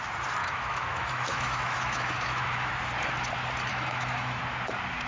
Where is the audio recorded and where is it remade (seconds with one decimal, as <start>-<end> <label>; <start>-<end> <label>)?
0.0-0.4 recorded; 0.4-2.7 remade; 2.7-3.7 recorded; 3.7-4.4 remade; 4.4-5.1 recorded